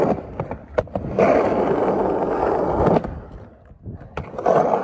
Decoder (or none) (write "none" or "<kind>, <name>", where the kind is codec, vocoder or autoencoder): none